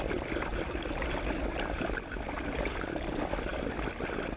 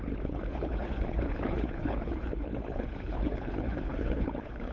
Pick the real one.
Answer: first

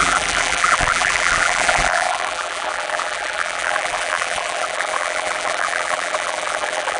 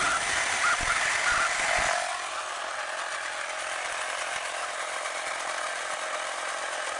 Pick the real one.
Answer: second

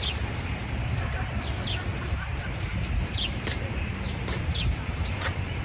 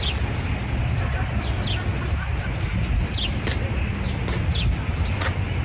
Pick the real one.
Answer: second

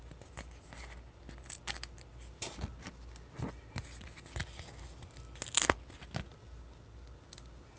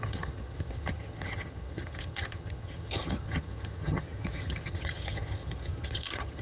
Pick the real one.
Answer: first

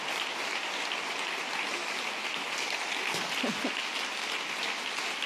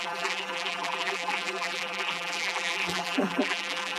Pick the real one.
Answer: first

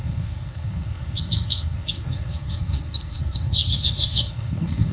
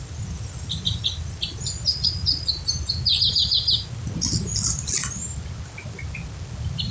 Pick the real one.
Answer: second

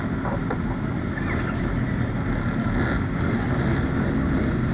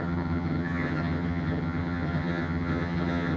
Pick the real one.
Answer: first